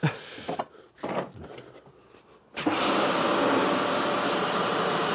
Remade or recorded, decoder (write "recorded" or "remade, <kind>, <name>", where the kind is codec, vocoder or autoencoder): recorded